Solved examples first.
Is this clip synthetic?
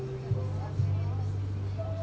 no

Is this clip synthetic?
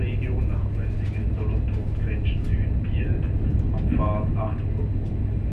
no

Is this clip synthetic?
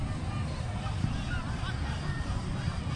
no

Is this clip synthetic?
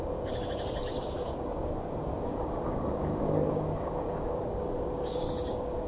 yes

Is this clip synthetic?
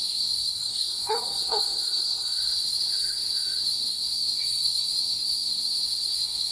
yes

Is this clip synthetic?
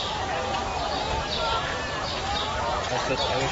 no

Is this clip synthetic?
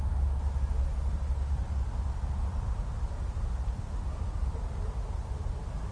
no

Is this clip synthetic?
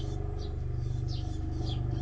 no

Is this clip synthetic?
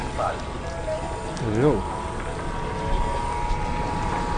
no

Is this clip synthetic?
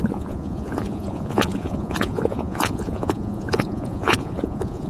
yes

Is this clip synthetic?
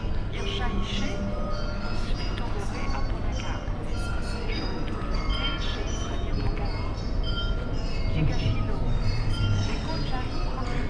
no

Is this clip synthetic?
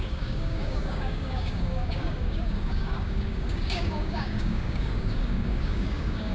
yes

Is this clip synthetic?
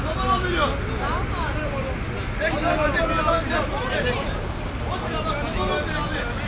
no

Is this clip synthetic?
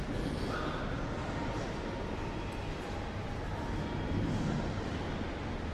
no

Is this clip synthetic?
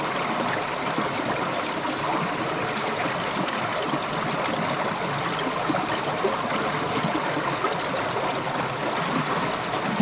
no